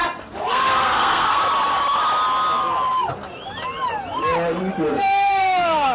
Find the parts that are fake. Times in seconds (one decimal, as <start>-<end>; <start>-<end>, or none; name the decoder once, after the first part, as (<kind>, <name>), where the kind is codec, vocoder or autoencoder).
0.5-1.4 (codec, SNAC); 4.9-5.9